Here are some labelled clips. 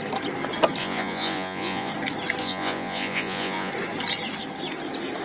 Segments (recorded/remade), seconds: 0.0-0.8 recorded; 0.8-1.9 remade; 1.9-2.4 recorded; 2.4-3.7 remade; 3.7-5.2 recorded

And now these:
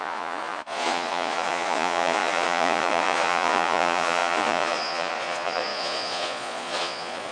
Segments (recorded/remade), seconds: 0.0-7.3 remade

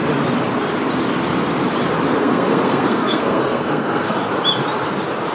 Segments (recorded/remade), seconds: 0.0-2.2 recorded; 2.2-4.2 remade; 4.2-5.3 recorded

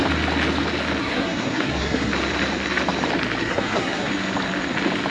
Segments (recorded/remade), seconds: 0.0-1.0 recorded; 1.0-2.1 remade; 2.1-3.4 recorded; 3.4-4.1 remade; 4.1-5.1 recorded

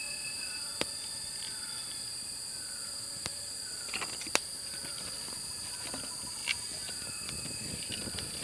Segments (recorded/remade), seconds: 0.0-0.7 recorded; 0.7-5.2 remade; 5.2-8.4 recorded

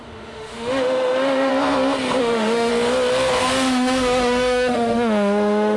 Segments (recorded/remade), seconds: 0.0-1.5 remade; 1.5-2.2 recorded; 2.2-2.7 remade; 2.7-3.4 recorded; 3.4-5.8 remade